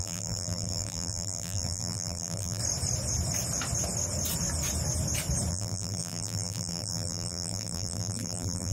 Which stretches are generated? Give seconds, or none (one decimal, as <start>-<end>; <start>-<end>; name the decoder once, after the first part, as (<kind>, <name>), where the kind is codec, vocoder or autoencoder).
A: 0.0-2.6 (vocoder, BigVGAN v2); 5.5-8.7